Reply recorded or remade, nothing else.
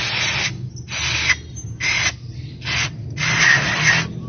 recorded